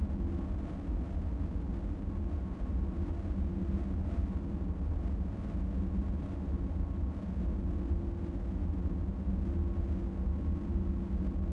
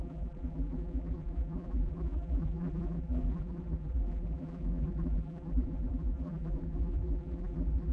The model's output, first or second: second